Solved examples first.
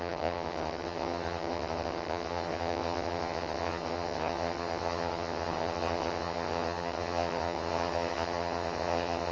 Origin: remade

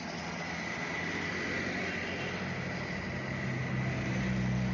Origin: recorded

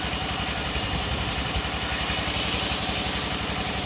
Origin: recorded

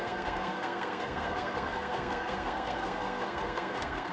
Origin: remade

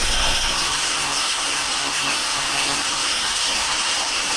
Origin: remade